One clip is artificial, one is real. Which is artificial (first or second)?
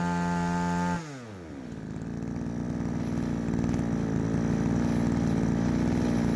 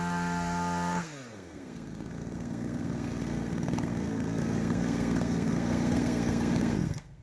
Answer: second